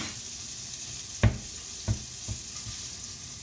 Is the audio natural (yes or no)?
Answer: yes